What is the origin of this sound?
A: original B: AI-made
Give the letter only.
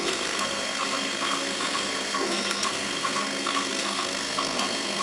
B